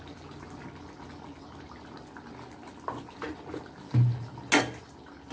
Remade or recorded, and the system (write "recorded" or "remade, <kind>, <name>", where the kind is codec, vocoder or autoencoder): recorded